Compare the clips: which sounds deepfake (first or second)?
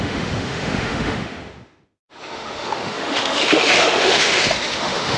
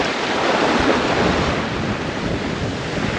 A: first